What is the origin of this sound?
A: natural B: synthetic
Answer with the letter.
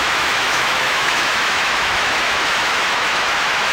B